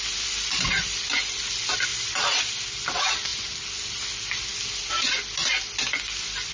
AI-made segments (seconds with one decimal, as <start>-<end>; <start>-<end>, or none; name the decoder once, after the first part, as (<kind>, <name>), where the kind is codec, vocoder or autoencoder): none